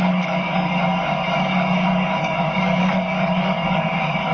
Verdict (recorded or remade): remade